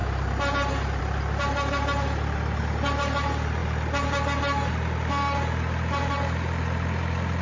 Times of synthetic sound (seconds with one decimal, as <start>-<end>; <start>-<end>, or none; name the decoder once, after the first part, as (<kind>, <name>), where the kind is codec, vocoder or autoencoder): none

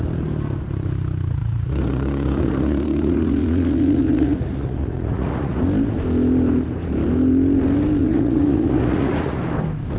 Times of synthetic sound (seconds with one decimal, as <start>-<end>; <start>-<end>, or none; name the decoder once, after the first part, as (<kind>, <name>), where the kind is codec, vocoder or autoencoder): 1.4-5.6 (vocoder, Vocos); 8.0-9.4

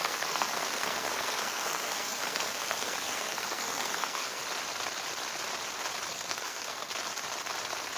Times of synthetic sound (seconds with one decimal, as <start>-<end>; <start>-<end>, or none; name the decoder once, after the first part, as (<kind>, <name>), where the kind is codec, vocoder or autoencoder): 0.0-4.4 (codec, SNAC); 6.1-6.9

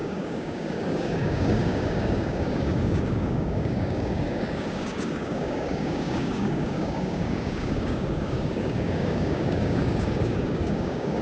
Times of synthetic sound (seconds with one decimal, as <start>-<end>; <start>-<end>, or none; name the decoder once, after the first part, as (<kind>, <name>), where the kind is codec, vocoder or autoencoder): 0.0-11.2 (codec, DAC)

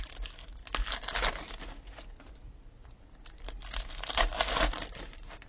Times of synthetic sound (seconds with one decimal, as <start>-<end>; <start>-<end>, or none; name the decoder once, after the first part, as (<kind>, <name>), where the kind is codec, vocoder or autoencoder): none

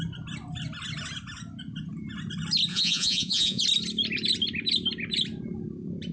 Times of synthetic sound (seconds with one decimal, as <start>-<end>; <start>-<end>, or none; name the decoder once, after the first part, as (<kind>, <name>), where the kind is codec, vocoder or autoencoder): 2.7-3.6 (vocoder, Vocos)